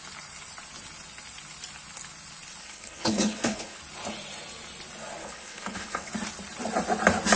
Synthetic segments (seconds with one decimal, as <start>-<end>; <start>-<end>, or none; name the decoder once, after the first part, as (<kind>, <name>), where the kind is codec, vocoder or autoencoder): 2.6-3.8 (codec, HILCodec); 5.2-6.1